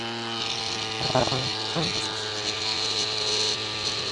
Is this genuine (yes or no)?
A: yes